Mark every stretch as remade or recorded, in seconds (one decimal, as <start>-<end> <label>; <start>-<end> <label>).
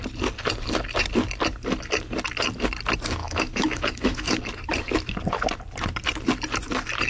0.0-3.2 recorded; 3.2-4.4 remade; 4.4-7.1 recorded